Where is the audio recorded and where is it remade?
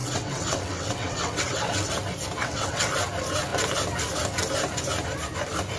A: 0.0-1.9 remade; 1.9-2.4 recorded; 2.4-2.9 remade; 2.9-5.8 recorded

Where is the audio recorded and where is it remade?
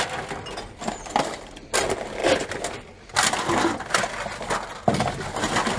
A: 0.0-5.8 recorded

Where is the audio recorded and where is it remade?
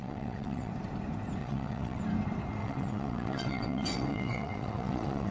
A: 0.0-0.7 remade; 0.7-1.4 recorded; 1.4-2.0 remade; 2.0-2.6 recorded; 2.6-5.3 remade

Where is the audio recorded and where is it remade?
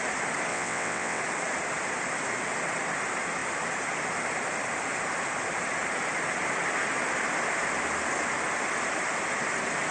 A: 0.0-0.5 recorded; 0.5-1.2 remade; 1.2-9.9 recorded